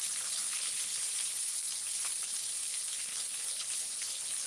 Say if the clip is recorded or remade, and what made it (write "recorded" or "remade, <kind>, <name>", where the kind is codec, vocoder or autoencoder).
remade, codec, HILCodec